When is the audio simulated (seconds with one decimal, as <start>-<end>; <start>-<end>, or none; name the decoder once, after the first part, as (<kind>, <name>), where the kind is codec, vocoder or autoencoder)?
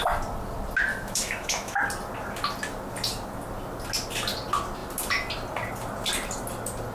0.9-1.8 (autoencoder, DAC-VAE)